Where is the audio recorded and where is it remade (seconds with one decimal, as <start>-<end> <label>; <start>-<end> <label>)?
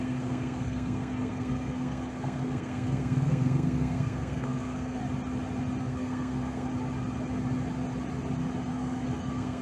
0.0-5.0 remade; 5.0-5.8 recorded; 5.8-6.7 remade; 6.7-8.7 recorded; 8.7-9.6 remade